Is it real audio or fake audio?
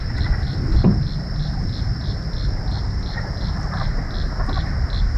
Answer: real